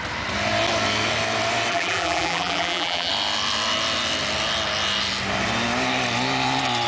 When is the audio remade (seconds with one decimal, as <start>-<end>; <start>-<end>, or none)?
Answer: 1.7-3.1